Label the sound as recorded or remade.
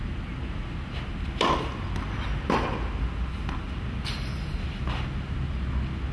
recorded